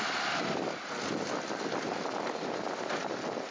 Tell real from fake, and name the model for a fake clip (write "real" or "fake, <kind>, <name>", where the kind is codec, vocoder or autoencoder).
real